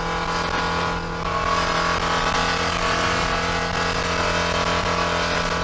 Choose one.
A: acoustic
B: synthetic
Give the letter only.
A